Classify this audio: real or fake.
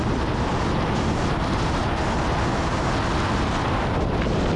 real